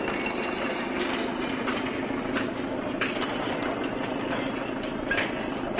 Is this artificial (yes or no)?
no